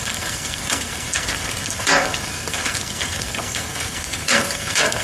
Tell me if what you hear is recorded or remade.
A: remade